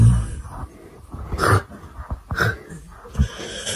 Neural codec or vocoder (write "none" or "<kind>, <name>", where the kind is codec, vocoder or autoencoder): none